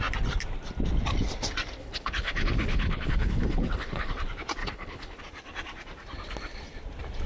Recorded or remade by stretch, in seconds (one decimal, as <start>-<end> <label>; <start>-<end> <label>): 0.0-1.8 recorded; 1.8-4.1 remade; 4.1-4.6 recorded; 4.6-5.2 remade; 5.2-7.3 recorded